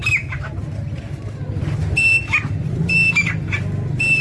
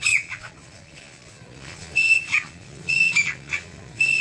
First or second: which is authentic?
first